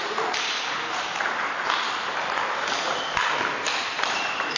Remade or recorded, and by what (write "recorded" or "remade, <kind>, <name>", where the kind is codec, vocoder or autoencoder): remade, vocoder, BigVGAN v2